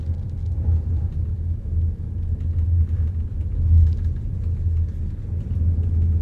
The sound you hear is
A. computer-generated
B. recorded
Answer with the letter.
B